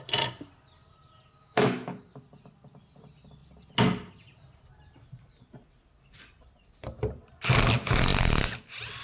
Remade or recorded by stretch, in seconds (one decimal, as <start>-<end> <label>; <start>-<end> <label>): 0.0-1.4 recorded; 1.4-2.0 remade; 2.0-9.0 recorded